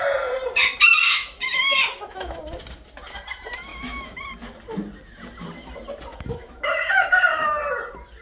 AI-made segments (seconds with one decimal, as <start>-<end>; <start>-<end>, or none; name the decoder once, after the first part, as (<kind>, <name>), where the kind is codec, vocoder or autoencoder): 1.2-2.4 (autoencoder, DAC-VAE); 3.7-4.2; 6.1-7.6